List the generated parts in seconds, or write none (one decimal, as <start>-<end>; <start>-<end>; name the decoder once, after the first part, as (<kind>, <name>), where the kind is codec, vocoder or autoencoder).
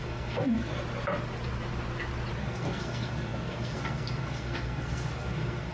0.0-0.7 (codec, SNAC); 2.4-5.7